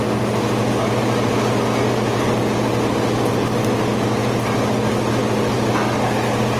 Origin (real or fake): real